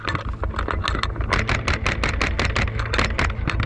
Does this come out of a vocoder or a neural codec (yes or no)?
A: no